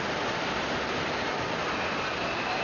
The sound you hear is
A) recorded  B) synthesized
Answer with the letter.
A